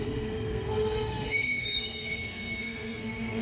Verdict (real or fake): fake